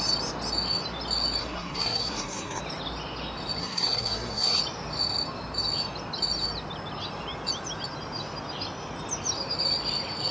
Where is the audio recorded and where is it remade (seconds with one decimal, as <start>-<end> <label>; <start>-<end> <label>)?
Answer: 0.0-1.4 recorded; 1.4-2.6 remade; 2.6-3.6 recorded; 3.6-4.6 remade; 4.6-10.3 recorded